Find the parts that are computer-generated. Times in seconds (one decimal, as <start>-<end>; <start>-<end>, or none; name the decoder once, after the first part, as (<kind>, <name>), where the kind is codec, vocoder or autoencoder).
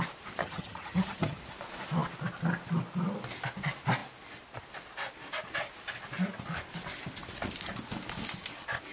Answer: 0.4-1.4 (vocoder, HiFi-GAN)